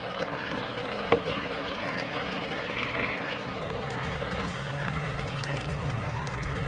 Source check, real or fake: fake